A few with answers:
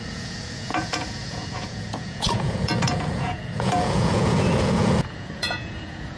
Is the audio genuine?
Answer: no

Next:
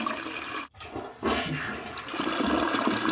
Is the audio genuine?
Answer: yes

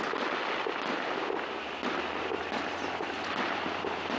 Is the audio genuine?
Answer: yes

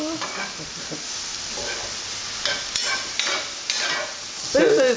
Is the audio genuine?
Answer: yes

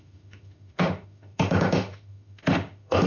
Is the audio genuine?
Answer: no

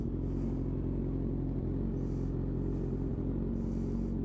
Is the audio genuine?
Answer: yes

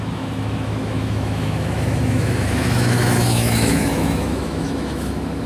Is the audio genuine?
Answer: no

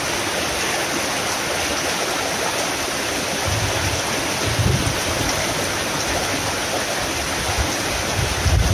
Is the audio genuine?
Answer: yes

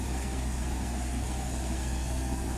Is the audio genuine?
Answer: no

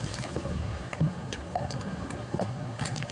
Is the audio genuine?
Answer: no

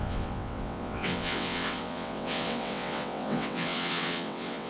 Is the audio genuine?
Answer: no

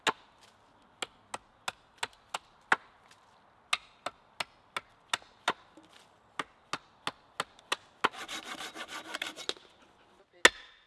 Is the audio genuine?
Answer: yes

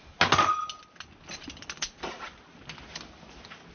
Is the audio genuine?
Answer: yes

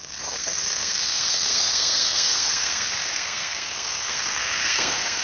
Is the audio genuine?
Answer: no